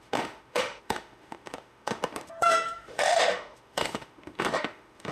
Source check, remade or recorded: remade